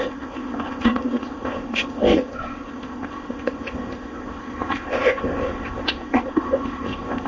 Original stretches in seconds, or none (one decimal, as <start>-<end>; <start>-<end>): none